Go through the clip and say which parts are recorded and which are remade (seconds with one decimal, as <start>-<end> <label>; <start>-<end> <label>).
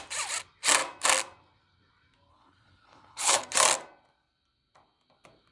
0.0-2.3 recorded; 2.3-3.4 remade; 3.4-5.5 recorded